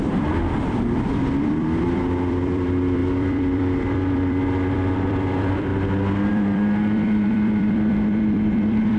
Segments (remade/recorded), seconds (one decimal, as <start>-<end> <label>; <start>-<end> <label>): 0.0-5.7 remade; 5.7-6.3 recorded; 6.3-9.0 remade